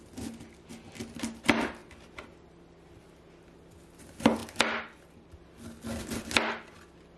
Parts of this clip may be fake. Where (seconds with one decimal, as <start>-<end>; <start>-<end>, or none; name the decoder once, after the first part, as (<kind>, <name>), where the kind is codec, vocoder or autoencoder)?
none